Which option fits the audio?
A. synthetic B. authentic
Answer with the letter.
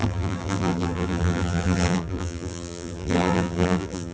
A